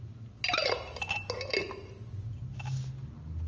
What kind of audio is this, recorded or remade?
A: recorded